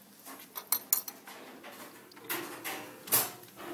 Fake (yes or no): no